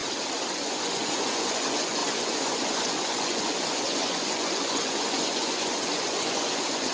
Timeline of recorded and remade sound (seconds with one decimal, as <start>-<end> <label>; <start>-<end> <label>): 0.0-0.6 recorded; 0.6-6.9 remade